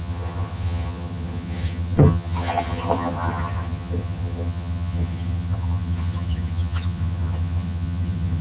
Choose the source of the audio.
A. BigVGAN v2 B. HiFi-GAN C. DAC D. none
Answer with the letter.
B